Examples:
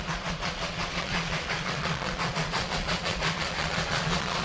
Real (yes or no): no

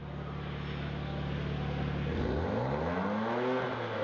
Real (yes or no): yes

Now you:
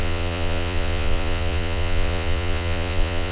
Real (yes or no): no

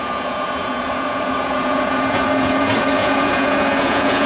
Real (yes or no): no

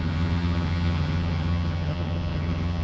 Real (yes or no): no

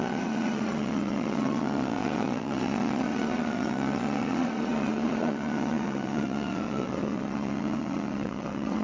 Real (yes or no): no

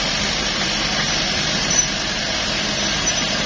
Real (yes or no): yes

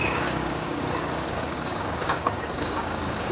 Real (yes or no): no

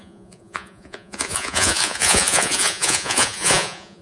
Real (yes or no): no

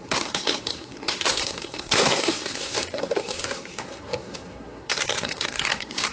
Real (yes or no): no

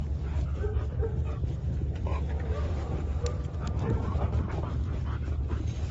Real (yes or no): yes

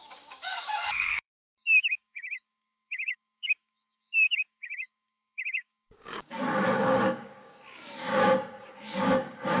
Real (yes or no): no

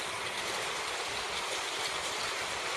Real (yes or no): yes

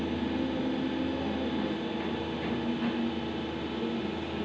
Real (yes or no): yes